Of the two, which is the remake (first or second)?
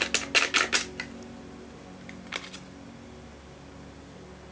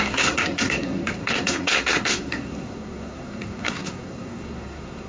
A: second